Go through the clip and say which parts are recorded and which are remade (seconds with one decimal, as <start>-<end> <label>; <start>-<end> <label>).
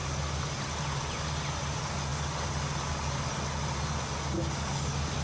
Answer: 0.0-5.2 recorded